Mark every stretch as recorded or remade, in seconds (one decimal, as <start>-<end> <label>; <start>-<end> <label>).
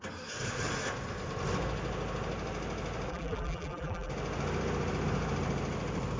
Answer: 0.0-3.1 recorded; 3.1-4.1 remade; 4.1-6.2 recorded